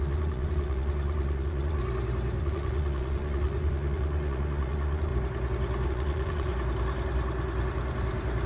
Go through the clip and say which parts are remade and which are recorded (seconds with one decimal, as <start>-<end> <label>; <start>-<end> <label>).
0.0-1.8 remade; 1.8-2.4 recorded; 2.4-5.1 remade; 5.1-5.9 recorded; 5.9-6.5 remade; 6.5-8.5 recorded